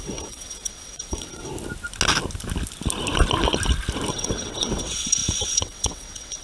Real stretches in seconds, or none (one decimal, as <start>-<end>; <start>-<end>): 1.5-4.1